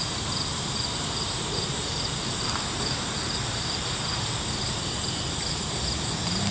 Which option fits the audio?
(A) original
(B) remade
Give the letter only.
B